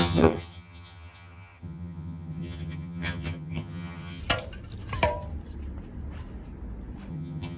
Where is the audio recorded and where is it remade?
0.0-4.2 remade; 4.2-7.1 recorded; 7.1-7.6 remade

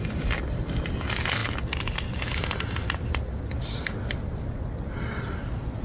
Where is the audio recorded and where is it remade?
0.0-5.8 recorded

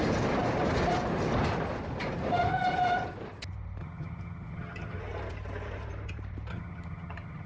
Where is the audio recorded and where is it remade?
0.0-3.8 recorded; 3.8-5.0 remade; 5.0-6.5 recorded; 6.5-7.5 remade